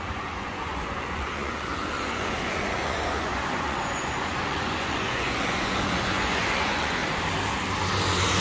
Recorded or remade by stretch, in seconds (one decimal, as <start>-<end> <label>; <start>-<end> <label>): 0.0-7.0 remade; 7.0-8.4 recorded